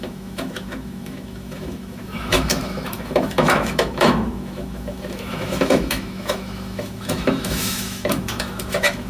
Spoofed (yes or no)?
yes